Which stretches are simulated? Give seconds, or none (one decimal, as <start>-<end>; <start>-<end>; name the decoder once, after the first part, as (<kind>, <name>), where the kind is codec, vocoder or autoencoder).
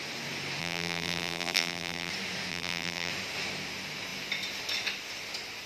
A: 0.6-2.1 (vocoder, BigVGAN v2); 2.5-3.1